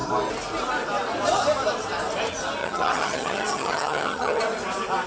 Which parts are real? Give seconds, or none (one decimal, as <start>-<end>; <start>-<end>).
0.0-2.6; 4.4-5.1